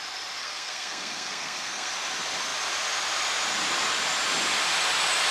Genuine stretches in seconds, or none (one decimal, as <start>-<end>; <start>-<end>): 0.0-0.4; 1.9-5.3